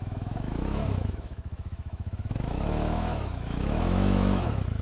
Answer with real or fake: fake